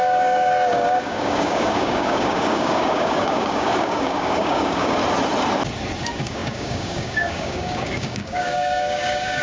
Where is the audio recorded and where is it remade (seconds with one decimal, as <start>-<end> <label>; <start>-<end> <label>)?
0.0-5.0 remade; 5.0-6.0 recorded; 6.0-9.4 remade